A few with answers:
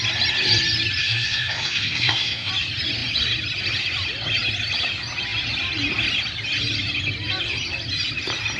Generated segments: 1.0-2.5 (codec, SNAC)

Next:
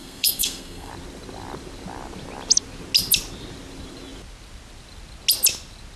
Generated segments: 0.0-0.9 (codec, SNAC)

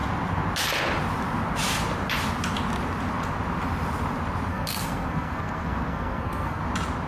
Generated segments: 4.5-6.6 (codec, SNAC)

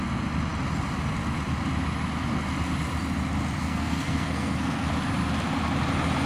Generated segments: 3.6-4.9 (codec, SNAC)